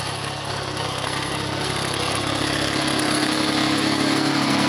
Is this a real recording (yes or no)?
no